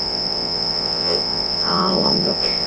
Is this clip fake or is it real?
fake